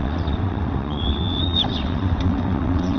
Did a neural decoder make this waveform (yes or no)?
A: yes